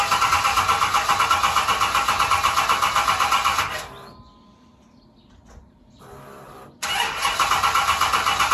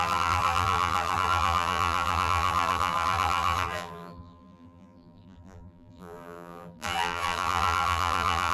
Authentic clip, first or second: first